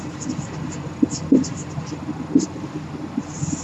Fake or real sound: real